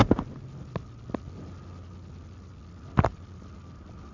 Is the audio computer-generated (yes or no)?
no